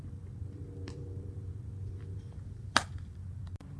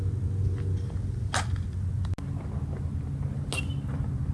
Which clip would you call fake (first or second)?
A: first